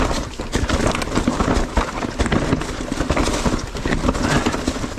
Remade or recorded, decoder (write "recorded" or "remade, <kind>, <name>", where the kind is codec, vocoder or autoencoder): recorded